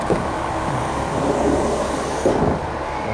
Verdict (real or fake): fake